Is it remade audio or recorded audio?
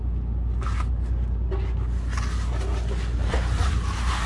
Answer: recorded